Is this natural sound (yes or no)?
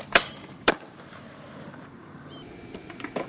no